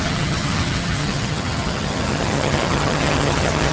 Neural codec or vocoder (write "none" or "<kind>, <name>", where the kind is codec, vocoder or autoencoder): vocoder, HiFi-GAN